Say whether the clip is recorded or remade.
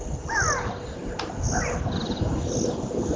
recorded